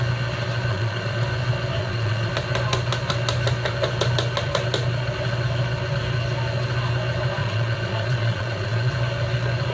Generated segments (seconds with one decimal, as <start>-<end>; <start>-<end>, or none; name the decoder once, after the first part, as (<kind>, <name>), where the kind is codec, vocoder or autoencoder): 0.7-1.2 (vocoder, Vocos); 1.8-2.3; 7.4-8.9